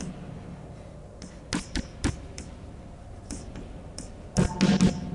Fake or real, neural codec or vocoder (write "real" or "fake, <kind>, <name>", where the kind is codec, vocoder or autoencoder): real